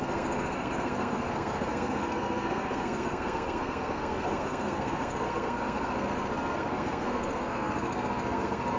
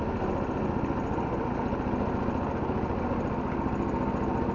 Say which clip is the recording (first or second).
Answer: second